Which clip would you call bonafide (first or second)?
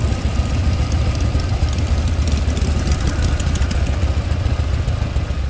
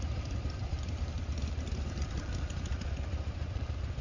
first